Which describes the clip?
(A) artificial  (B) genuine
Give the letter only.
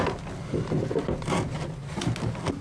B